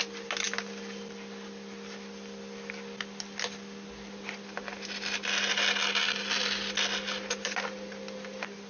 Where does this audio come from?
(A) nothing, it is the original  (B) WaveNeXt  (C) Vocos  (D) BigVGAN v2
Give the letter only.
A